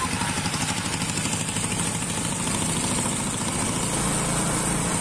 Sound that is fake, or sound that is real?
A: real